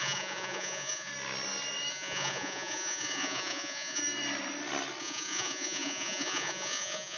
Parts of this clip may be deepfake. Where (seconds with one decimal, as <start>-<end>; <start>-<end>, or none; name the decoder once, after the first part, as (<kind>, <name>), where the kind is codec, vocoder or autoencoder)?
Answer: 0.0-1.1 (vocoder, Vocos); 1.9-4.0; 5.0-7.2